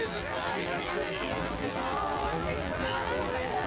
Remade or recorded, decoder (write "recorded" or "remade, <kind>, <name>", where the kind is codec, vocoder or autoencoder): remade, vocoder, BigVGAN v2